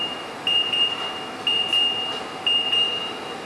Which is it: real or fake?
real